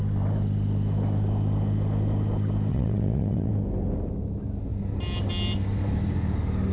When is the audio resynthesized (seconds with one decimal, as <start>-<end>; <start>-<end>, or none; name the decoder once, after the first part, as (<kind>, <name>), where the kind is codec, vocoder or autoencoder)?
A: 2.7-3.5 (vocoder, WaveNeXt)